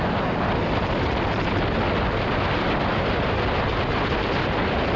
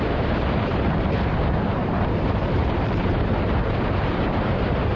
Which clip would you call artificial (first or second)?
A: second